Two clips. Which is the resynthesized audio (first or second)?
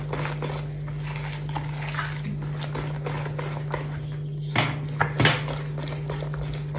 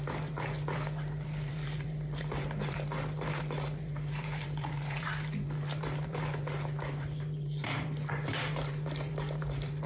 second